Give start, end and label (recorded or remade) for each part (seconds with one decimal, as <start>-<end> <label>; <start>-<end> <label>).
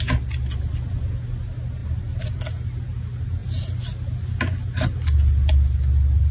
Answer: 0.0-6.3 recorded